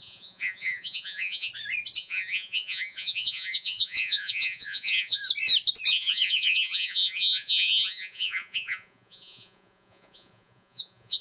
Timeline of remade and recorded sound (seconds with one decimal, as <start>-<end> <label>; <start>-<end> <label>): 0.0-1.5 remade; 1.5-2.0 recorded; 2.0-5.2 remade; 5.2-5.9 recorded; 5.9-11.2 remade